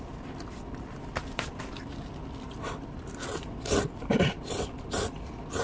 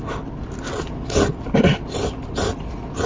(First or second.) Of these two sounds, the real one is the second